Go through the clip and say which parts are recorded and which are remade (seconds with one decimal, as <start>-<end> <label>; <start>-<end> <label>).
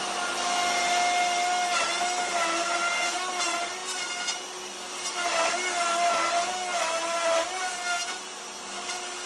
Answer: 0.0-9.3 recorded